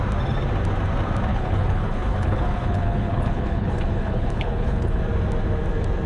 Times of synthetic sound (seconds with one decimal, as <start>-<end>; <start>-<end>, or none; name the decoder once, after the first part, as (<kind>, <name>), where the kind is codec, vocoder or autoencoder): 1.3-5.0 (codec, HILCodec)